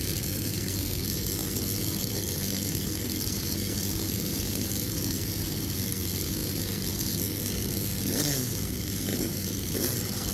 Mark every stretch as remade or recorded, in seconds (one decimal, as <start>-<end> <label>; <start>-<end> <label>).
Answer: 0.0-10.3 remade